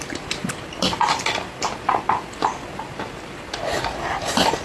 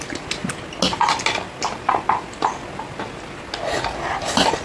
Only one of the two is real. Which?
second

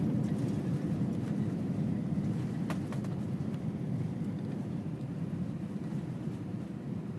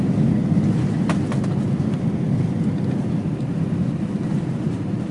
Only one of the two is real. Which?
second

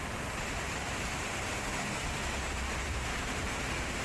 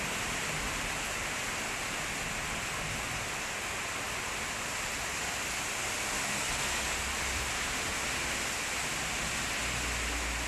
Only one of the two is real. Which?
second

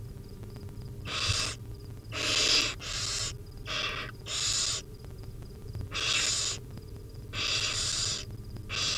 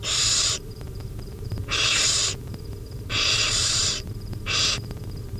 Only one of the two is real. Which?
first